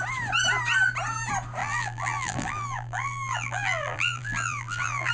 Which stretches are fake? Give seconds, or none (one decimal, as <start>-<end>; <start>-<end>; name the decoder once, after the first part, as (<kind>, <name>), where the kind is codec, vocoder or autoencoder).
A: 1.6-5.1 (vocoder, BigVGAN v2)